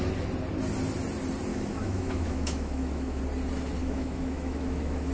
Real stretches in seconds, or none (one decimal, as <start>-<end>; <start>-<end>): 0.0-1.5; 3.2-3.8

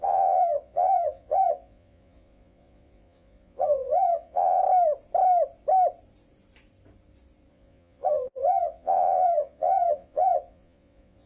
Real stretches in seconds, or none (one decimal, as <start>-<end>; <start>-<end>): 4.6-7.5

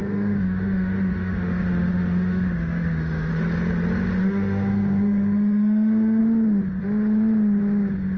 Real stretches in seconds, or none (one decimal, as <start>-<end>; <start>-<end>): 3.3-4.2; 6.2-8.2

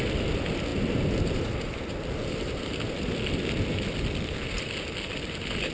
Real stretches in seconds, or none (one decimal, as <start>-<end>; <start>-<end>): 0.0-5.7

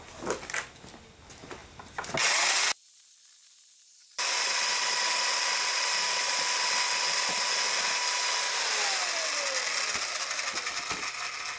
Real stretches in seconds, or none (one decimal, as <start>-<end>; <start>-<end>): 0.0-11.6

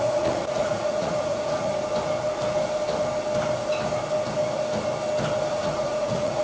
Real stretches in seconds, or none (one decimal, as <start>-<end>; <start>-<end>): 1.7-5.5